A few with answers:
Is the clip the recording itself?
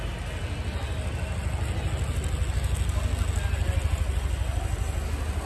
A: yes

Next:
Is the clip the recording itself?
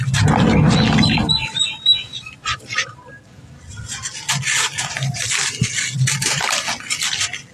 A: yes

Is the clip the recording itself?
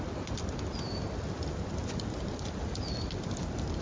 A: yes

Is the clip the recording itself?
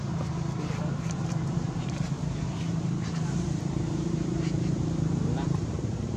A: no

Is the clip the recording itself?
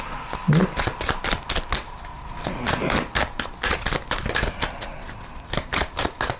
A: yes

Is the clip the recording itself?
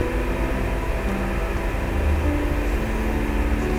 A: yes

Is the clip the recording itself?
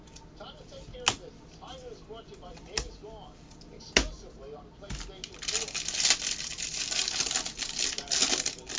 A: yes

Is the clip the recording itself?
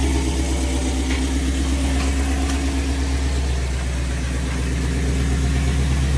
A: yes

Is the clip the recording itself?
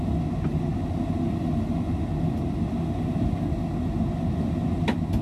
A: yes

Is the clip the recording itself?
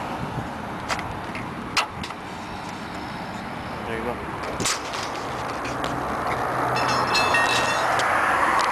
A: yes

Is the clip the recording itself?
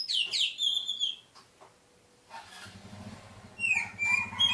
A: yes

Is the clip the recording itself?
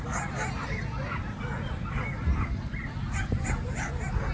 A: yes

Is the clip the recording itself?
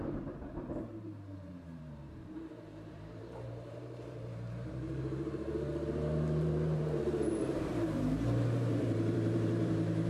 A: no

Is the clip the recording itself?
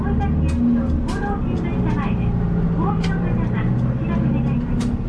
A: yes